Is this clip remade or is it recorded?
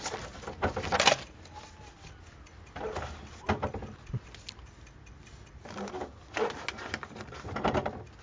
recorded